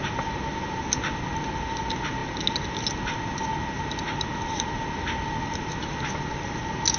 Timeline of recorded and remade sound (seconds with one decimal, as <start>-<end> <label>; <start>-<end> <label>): 0.0-7.0 recorded